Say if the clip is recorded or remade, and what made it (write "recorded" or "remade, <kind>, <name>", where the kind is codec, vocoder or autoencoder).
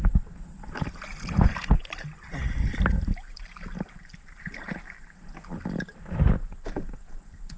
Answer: recorded